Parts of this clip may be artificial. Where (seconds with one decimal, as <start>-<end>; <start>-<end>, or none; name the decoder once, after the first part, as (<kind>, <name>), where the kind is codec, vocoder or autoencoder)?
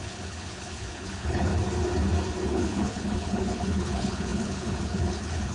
0.0-1.5 (codec, HILCodec); 2.5-5.5